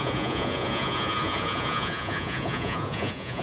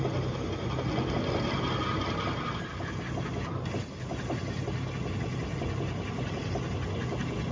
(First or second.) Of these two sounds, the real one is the second